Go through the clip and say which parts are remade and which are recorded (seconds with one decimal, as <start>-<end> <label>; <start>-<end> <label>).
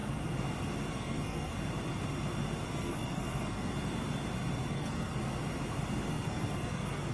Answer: 0.0-0.9 recorded; 0.9-1.5 remade; 1.5-2.7 recorded; 2.7-3.7 remade; 3.7-4.7 recorded; 4.7-5.2 remade; 5.2-6.1 recorded; 6.1-7.1 remade